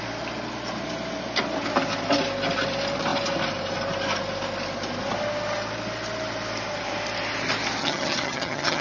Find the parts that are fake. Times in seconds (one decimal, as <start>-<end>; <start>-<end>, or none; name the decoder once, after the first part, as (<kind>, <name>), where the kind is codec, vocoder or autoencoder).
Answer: 7.8-8.8 (vocoder, HiFi-GAN)